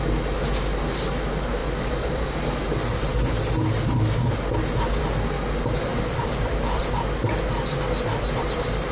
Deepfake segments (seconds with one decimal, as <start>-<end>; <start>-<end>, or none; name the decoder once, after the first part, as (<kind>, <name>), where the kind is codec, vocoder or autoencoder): 1.6-2.2 (vocoder, BigVGAN v2); 5.9-6.8

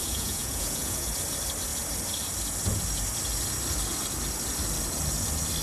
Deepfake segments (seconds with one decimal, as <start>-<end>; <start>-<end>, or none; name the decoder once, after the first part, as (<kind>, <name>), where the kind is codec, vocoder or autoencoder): 0.0-1.1 (vocoder, Vocos)

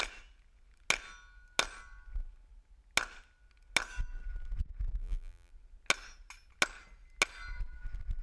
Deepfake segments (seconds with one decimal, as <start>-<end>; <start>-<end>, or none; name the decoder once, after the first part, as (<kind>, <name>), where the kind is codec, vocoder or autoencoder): 5.0-5.5 (vocoder, BigVGAN v2)